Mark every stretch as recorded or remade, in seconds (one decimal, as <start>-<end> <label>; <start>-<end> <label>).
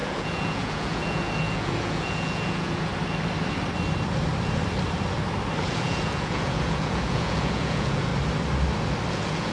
0.0-2.9 remade; 2.9-5.6 recorded; 5.6-8.1 remade; 8.1-9.1 recorded; 9.1-9.5 remade